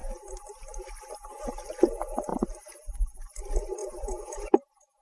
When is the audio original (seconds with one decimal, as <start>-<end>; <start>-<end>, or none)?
0.0-3.8